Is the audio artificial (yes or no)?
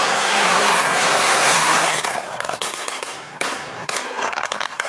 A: yes